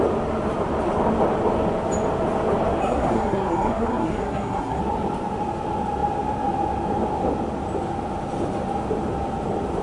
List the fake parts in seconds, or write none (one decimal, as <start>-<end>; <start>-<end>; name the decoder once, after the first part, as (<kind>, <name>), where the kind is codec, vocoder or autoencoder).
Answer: 2.8-4.8 (codec, SNAC)